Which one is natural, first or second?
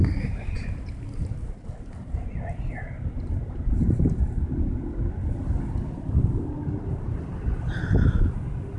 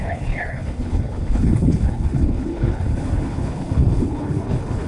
first